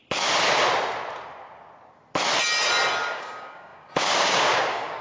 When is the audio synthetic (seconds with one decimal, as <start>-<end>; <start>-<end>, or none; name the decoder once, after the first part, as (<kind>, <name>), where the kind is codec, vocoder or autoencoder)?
3.0-5.0 (codec, DAC)